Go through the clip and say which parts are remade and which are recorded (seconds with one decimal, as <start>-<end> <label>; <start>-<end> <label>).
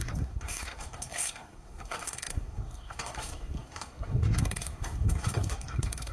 0.0-6.1 remade